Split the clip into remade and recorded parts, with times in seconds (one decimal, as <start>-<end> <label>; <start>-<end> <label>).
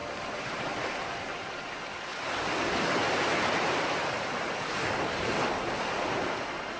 0.0-1.0 remade; 1.0-6.8 recorded